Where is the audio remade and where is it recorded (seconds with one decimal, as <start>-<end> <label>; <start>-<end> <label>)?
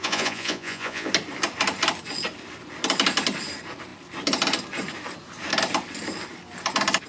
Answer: 0.0-1.1 remade; 1.1-7.1 recorded